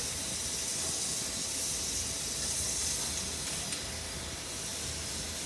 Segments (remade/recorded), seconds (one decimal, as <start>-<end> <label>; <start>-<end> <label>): 0.0-5.5 recorded

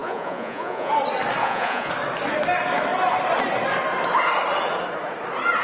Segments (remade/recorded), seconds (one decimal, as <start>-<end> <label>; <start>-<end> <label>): 0.0-0.9 remade; 0.9-1.4 recorded; 1.4-1.9 remade; 1.9-5.6 recorded

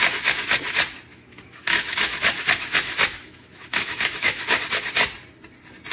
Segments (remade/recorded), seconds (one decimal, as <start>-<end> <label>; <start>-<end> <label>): 0.0-1.1 recorded; 1.1-4.6 remade; 4.6-5.9 recorded

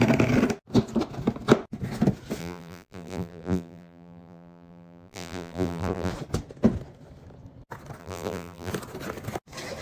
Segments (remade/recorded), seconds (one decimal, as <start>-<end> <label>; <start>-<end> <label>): 0.0-2.4 recorded; 2.4-6.1 remade; 6.1-8.0 recorded; 8.0-8.7 remade; 8.7-9.8 recorded

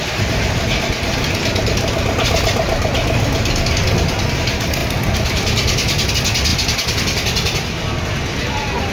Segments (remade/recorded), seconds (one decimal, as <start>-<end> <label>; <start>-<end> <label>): 0.0-8.9 recorded

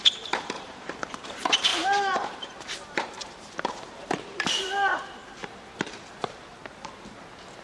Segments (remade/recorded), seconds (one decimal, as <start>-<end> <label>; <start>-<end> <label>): 0.0-6.6 remade; 6.6-7.6 recorded

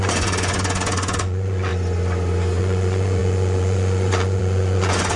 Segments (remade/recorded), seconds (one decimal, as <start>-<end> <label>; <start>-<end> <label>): 0.0-1.7 remade; 1.7-2.6 recorded; 2.6-5.2 remade

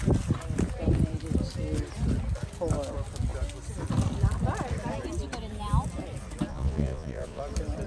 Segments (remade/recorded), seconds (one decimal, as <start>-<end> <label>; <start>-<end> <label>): 0.0-6.5 recorded; 6.5-7.4 remade; 7.4-7.9 recorded